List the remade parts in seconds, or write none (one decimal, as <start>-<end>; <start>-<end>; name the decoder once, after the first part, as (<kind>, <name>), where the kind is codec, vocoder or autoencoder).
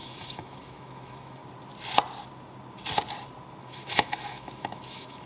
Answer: 0.0-1.4 (autoencoder, DAC-VAE); 3.6-5.3